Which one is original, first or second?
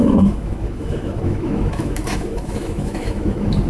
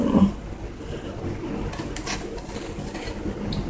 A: second